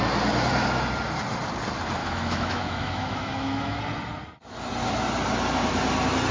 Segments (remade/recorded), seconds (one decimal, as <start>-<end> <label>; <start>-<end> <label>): 0.0-2.0 recorded; 2.0-3.8 remade; 3.8-6.3 recorded